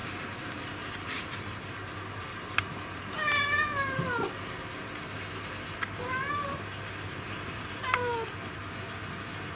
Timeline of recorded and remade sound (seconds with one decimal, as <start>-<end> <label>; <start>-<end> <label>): 0.0-1.7 remade; 1.7-9.6 recorded

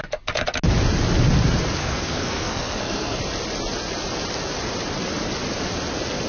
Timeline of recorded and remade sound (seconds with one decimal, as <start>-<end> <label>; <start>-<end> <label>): 0.0-1.8 recorded; 1.8-3.2 remade; 3.2-6.3 recorded

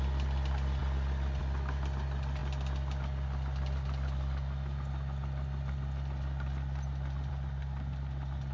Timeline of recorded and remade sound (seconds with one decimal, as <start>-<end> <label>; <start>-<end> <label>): 0.0-8.5 recorded

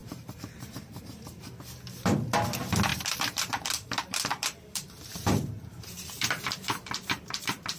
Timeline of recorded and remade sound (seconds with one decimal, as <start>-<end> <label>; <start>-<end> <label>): 0.0-1.4 remade; 1.4-2.9 recorded; 2.9-7.8 remade